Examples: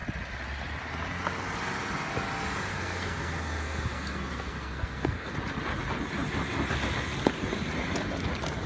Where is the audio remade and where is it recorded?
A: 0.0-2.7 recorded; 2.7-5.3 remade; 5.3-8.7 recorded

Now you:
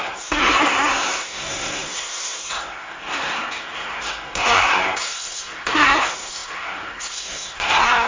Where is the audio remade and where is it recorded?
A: 0.0-8.1 remade

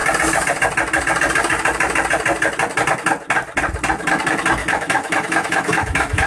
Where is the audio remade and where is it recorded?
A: 0.0-4.6 recorded; 4.6-6.3 remade